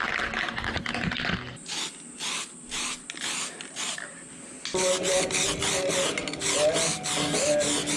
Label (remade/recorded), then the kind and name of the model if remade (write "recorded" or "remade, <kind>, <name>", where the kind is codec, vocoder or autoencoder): recorded